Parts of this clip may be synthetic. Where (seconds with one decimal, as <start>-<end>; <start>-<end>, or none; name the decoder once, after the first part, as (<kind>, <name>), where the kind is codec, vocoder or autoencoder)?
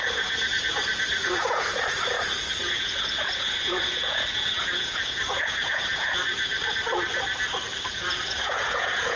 0.0-6.5 (vocoder, Vocos); 7.9-9.2